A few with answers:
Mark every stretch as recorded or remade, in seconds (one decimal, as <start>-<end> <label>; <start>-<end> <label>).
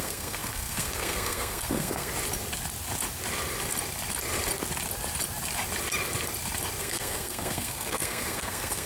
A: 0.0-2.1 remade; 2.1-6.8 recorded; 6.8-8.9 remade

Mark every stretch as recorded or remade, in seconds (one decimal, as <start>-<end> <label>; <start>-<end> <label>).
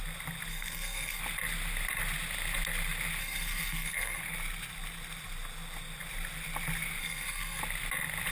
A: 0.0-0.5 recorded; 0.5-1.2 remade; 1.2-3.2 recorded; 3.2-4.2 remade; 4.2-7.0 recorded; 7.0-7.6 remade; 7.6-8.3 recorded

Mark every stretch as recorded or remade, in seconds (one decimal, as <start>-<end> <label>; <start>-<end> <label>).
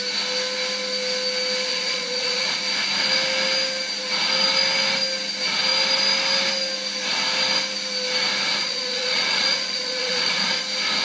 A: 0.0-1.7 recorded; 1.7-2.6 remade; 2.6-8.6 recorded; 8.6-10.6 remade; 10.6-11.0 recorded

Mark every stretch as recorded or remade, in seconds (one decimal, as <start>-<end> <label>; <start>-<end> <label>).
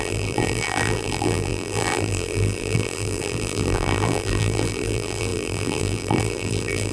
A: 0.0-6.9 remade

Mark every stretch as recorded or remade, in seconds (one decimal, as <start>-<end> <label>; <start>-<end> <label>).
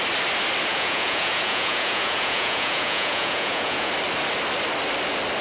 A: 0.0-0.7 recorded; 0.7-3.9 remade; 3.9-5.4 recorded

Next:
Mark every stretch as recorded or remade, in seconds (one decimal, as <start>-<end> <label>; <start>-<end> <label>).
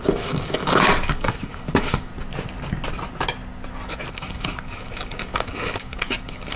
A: 0.0-2.1 remade; 2.1-4.1 recorded; 4.1-6.6 remade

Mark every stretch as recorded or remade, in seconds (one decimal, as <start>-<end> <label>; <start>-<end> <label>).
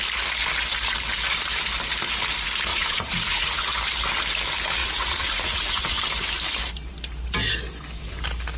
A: 0.0-2.7 recorded; 2.7-3.6 remade; 3.6-4.8 recorded; 4.8-6.0 remade; 6.0-8.6 recorded